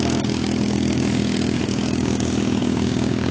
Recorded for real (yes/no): no